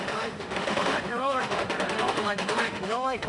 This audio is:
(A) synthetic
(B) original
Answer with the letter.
A